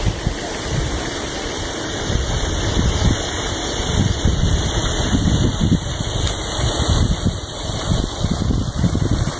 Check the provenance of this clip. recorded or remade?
remade